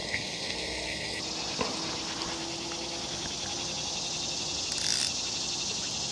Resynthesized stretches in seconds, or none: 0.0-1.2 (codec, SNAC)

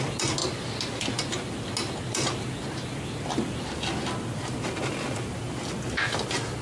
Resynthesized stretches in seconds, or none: none

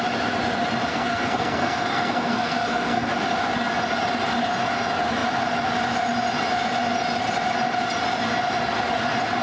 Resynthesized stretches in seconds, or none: 0.9-3.1 (codec, SNAC)

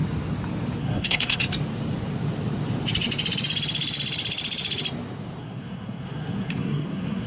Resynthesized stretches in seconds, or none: 0.8-1.4 (codec, SNAC); 5.4-7.3

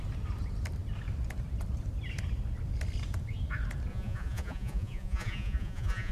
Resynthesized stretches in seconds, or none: 3.9-6.1 (vocoder, Vocos)

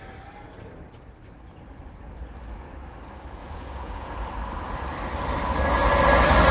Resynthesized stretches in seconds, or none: 3.4-4.3 (vocoder, Vocos)

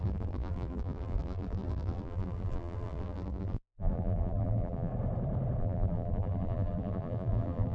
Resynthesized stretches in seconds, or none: 0.0-4.9 (vocoder, BigVGAN v2); 5.6-7.7